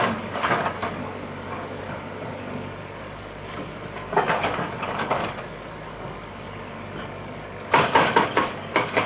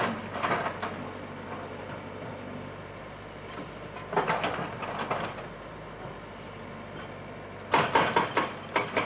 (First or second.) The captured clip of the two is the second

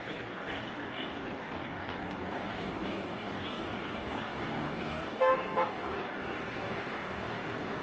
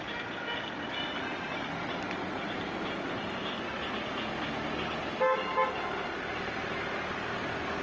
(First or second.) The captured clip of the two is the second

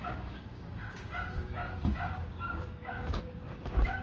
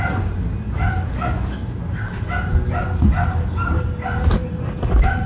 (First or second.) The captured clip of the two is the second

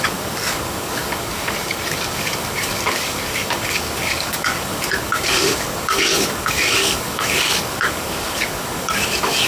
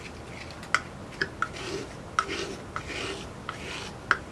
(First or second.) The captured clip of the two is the second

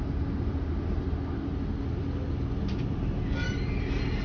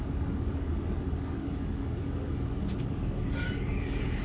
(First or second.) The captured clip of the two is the first